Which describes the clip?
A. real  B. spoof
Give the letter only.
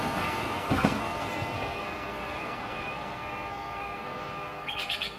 B